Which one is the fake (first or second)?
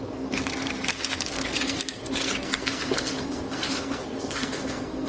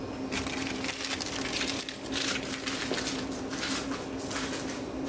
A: first